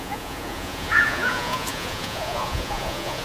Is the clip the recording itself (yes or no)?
no